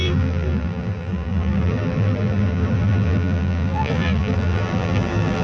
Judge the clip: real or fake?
fake